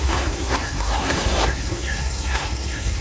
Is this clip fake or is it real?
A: fake